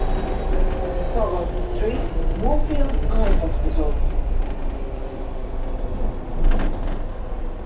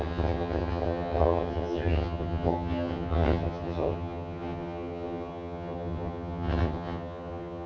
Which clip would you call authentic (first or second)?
first